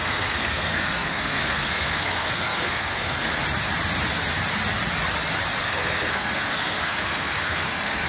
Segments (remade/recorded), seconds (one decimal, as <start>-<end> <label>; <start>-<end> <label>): 0.0-3.3 remade; 3.3-5.6 recorded; 5.6-8.1 remade